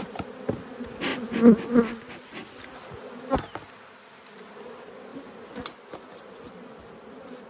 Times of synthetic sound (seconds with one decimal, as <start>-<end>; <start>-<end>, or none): none